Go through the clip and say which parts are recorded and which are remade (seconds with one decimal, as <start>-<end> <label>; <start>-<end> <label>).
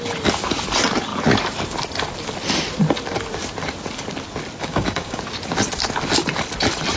0.0-4.6 recorded; 4.6-5.2 remade; 5.2-7.0 recorded